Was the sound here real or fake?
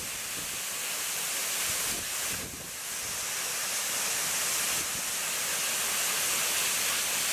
real